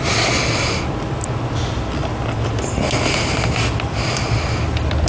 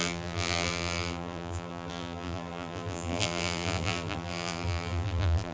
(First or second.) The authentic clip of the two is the first